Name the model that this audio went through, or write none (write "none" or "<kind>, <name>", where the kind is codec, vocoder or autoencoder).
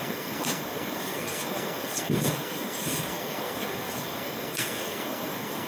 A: codec, SNAC